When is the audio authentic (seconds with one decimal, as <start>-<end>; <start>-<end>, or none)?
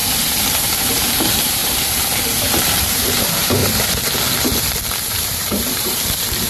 3.6-5.1